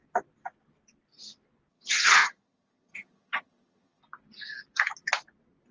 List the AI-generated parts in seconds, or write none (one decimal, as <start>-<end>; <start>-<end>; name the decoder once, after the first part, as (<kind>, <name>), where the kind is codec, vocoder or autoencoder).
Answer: 1.7-4.0 (vocoder, HiFi-GAN)